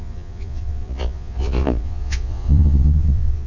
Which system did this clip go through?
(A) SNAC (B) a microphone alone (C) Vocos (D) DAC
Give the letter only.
C